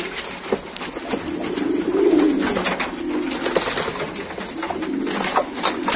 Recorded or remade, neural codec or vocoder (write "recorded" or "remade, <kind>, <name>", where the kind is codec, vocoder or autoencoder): recorded